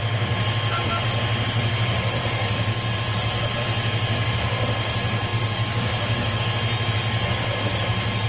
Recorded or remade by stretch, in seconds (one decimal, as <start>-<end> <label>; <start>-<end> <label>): 0.0-2.2 recorded; 2.2-2.9 remade; 2.9-5.3 recorded; 5.3-6.4 remade; 6.4-8.3 recorded

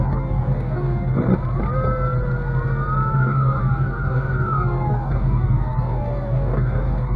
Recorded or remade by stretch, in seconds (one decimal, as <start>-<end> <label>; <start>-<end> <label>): 0.0-1.3 remade; 1.3-3.1 recorded; 3.1-7.2 remade